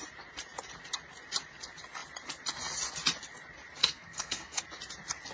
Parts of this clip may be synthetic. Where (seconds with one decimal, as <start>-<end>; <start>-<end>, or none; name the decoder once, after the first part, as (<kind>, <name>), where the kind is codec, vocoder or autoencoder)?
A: 3.8-4.6 (codec, SNAC)